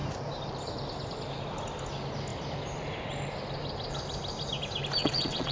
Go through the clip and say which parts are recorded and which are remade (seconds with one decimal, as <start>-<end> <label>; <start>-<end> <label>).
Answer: 0.0-5.0 recorded; 5.0-5.5 remade

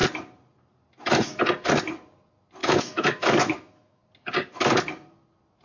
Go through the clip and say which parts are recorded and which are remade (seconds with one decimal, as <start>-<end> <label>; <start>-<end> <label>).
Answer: 0.0-2.6 recorded; 2.6-4.0 remade; 4.0-5.6 recorded

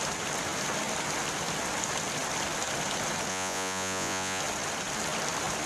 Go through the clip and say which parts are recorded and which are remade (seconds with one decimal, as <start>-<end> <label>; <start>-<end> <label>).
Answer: 0.0-3.3 recorded; 3.3-4.4 remade; 4.4-5.7 recorded

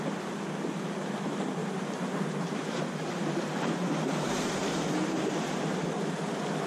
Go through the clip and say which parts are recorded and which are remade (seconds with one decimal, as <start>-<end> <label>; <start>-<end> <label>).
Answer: 0.0-1.6 recorded; 1.6-5.6 remade; 5.6-6.7 recorded

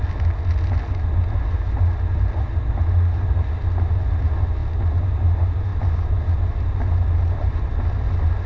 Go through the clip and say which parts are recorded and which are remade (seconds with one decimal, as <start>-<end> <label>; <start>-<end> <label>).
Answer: 0.0-8.5 recorded